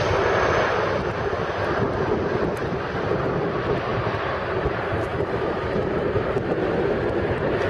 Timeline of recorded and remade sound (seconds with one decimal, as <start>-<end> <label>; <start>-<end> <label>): 0.0-3.9 recorded; 3.9-4.6 remade; 4.6-5.1 recorded; 5.1-6.3 remade; 6.3-7.7 recorded